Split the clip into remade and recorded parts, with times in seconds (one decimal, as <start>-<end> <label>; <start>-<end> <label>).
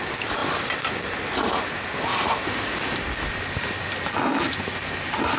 0.0-5.4 recorded